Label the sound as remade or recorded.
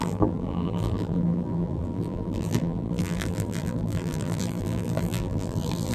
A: remade